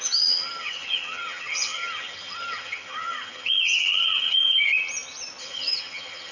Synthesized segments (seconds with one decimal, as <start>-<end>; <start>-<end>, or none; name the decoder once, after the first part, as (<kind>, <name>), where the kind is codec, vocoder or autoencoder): 0.0-4.7 (vocoder, HiFi-GAN); 5.4-6.3